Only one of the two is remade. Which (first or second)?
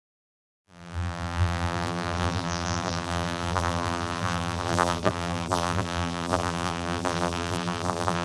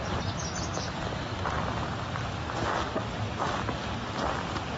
first